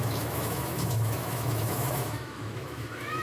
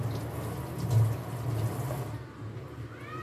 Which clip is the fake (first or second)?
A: first